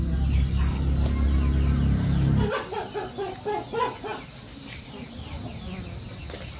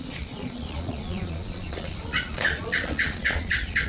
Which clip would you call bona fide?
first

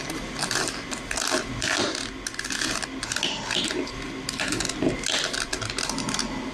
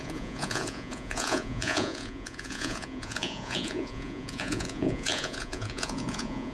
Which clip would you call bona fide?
first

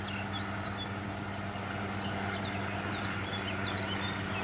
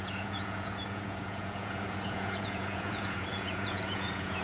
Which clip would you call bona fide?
first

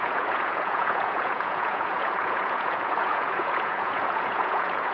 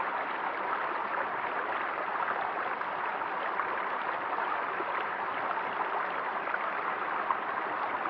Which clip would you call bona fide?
second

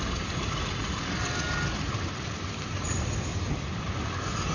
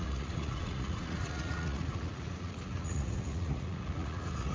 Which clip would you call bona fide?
first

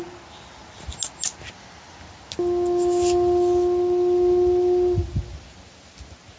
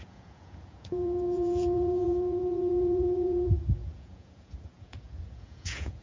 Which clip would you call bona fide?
first